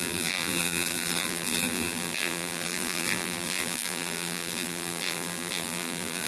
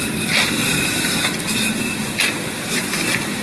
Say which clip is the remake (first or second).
first